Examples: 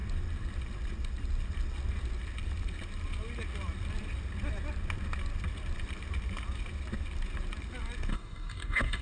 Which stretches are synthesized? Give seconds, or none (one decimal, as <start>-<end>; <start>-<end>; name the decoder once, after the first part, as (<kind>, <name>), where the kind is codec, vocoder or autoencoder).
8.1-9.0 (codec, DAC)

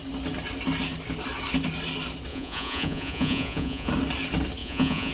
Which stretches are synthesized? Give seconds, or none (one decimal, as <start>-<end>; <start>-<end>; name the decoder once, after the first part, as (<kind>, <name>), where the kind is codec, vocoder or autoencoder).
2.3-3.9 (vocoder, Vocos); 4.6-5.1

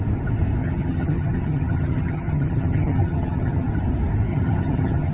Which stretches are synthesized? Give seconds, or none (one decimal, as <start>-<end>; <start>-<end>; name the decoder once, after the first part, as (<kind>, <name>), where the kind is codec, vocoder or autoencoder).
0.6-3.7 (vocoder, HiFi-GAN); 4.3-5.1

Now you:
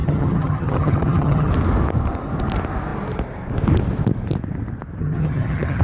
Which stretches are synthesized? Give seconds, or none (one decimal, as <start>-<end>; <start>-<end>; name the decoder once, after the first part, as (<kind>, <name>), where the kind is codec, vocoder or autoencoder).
0.0-1.5 (vocoder, HiFi-GAN); 5.0-5.8

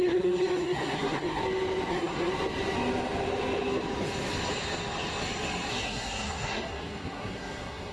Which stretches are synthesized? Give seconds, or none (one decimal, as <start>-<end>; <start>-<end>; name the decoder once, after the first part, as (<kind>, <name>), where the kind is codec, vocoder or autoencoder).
0.0-1.4 (codec, SNAC); 1.9-2.3; 5.7-7.9

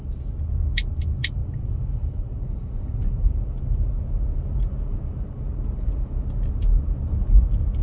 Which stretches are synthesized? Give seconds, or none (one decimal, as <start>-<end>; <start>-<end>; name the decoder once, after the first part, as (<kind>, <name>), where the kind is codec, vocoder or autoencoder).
1.4-6.0 (vocoder, BigVGAN v2)